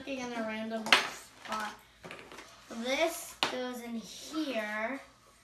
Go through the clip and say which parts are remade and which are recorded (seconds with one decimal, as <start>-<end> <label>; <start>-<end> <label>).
0.0-5.4 recorded